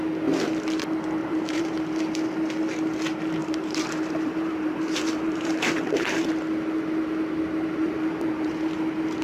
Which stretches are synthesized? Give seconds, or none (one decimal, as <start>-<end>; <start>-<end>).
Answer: 1.2-1.7; 3.4-6.3; 7.8-8.5